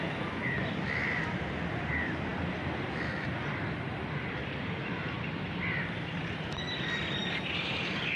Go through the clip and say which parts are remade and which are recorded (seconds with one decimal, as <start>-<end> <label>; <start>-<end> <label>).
0.0-2.3 recorded; 2.3-7.2 remade; 7.2-8.2 recorded